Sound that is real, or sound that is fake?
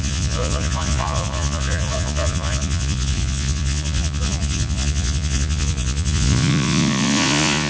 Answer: fake